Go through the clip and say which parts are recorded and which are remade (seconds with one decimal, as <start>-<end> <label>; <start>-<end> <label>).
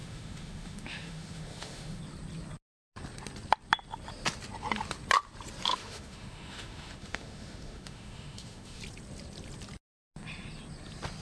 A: 0.0-2.0 remade; 2.0-5.7 recorded; 5.7-8.8 remade; 8.8-11.2 recorded